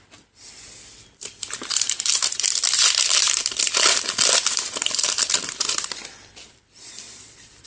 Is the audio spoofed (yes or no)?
yes